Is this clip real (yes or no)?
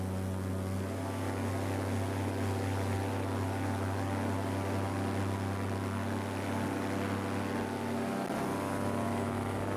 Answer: yes